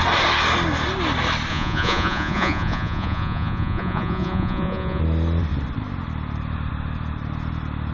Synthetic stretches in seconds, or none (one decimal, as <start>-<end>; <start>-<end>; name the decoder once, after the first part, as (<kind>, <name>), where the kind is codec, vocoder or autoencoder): 1.5-5.0 (vocoder, Vocos)